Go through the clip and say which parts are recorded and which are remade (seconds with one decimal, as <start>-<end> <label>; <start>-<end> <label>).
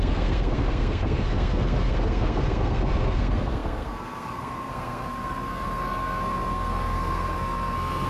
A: 0.0-8.1 remade